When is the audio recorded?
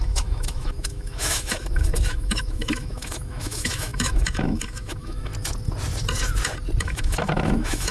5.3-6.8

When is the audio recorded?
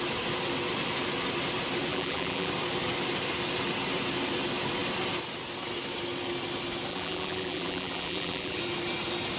0.0-1.9; 2.5-6.9; 8.6-9.4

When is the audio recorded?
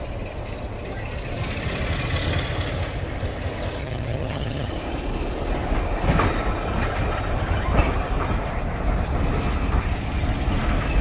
0.0-3.8; 4.7-11.0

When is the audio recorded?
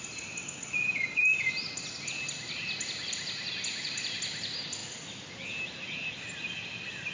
0.0-7.1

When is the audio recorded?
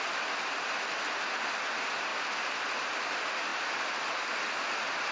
0.0-2.1; 3.1-5.1